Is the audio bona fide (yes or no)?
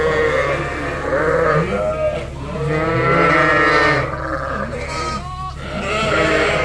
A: yes